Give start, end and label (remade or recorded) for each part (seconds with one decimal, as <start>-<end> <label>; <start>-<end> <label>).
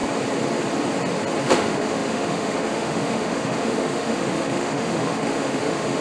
0.0-1.4 recorded; 1.4-6.0 remade